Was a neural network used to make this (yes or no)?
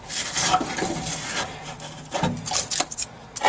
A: no